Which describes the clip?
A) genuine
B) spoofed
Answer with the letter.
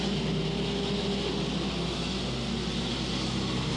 A